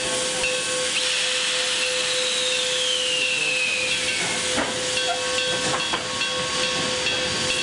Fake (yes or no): no